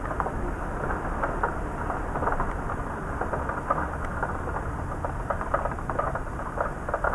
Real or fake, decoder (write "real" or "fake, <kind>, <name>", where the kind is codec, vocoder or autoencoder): real